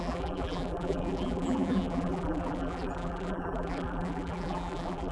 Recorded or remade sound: remade